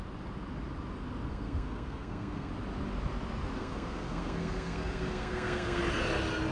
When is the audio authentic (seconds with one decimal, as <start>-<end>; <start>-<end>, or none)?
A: 0.0-1.3; 2.5-3.6; 5.8-6.5